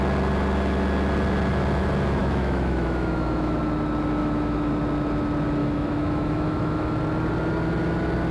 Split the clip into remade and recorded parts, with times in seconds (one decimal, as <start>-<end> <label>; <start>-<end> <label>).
0.0-2.2 recorded; 2.2-3.6 remade; 3.6-4.2 recorded; 4.2-4.7 remade; 4.7-5.6 recorded; 5.6-7.0 remade; 7.0-8.3 recorded